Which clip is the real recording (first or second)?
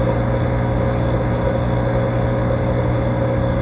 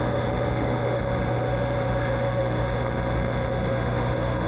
first